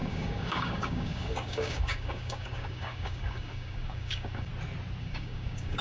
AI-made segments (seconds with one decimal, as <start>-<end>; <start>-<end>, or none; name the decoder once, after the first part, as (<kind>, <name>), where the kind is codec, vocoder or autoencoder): 0.0-4.5 (codec, DAC); 5.0-5.8